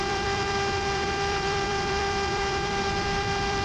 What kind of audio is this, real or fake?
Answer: fake